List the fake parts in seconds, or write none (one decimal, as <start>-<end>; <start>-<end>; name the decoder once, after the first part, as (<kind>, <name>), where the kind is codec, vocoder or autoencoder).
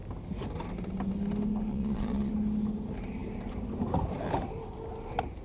1.7-2.3 (vocoder, Vocos)